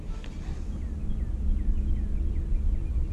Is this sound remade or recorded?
recorded